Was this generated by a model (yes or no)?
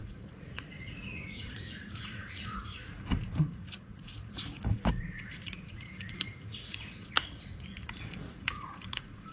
yes